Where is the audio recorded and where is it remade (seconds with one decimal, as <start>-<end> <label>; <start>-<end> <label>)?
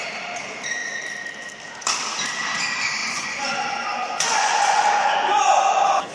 0.0-3.0 recorded; 3.0-5.4 remade; 5.4-6.1 recorded